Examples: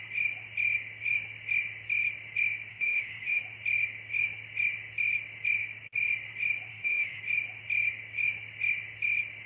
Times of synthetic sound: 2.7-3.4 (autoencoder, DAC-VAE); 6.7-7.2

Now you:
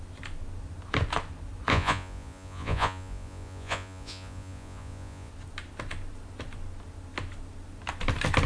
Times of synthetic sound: 1.7-5.3 (vocoder, Vocos)

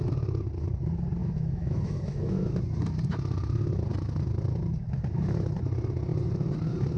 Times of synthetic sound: 1.2-2.5 (autoencoder, DAC-VAE)

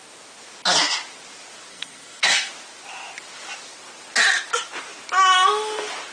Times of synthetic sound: 1.7-2.5 (codec, SNAC)

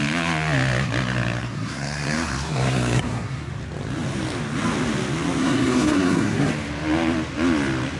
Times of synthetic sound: 1.4-3.5 (codec, SNAC); 5.4-6.5

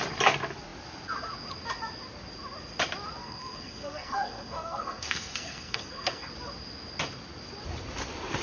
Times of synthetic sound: 3.2-6.3 (codec, SNAC)